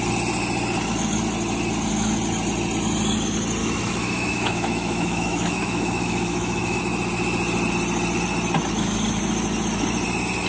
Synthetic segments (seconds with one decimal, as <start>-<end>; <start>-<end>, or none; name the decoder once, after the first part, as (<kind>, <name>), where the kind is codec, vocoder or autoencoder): 3.6-6.8 (autoencoder, DAC-VAE)